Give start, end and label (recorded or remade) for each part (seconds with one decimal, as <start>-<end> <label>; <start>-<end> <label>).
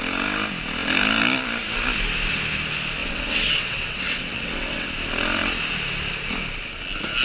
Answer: 0.0-3.0 recorded; 3.0-4.9 remade; 4.9-7.2 recorded